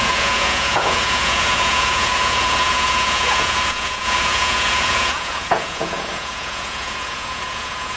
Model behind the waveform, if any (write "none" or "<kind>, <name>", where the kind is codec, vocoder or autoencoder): vocoder, Vocos